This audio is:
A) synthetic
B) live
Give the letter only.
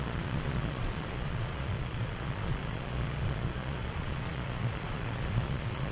A